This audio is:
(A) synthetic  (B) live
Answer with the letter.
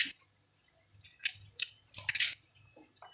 B